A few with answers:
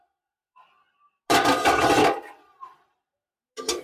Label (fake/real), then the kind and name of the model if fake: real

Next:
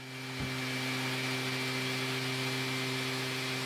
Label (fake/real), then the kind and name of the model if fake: real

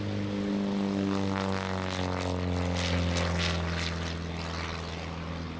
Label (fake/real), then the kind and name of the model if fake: real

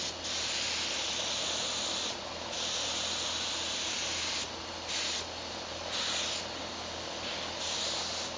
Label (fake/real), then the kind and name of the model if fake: real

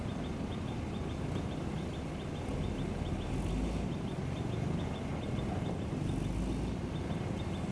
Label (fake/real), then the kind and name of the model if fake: real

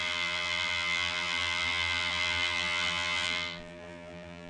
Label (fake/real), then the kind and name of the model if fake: fake, vocoder, BigVGAN v2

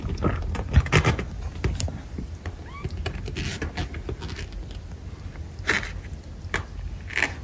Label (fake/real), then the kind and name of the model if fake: real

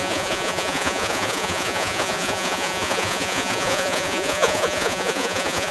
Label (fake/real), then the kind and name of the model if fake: fake, vocoder, Vocos